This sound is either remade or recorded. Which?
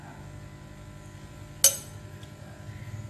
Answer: recorded